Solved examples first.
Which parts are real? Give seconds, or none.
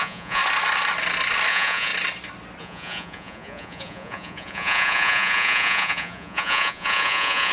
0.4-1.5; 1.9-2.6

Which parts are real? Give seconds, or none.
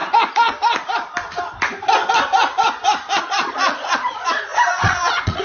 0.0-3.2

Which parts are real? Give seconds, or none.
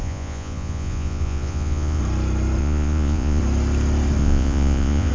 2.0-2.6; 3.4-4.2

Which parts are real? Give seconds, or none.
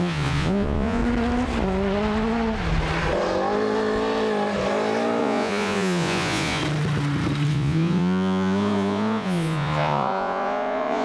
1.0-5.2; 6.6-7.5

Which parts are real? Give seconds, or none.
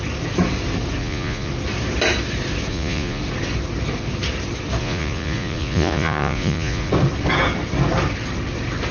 0.0-1.0; 1.5-2.7; 3.2-4.8; 6.9-8.9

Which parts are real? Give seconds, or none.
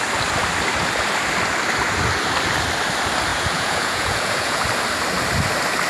0.0-3.3; 4.6-5.9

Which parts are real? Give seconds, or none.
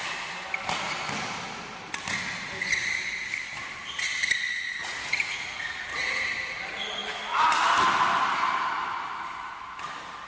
0.0-4.8; 5.9-10.3